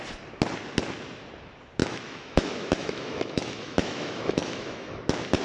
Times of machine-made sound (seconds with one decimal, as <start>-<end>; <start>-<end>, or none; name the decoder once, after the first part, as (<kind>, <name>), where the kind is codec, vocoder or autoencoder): 1.8-5.0 (autoencoder, DAC-VAE)